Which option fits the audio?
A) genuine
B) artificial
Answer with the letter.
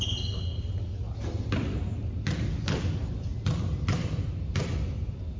A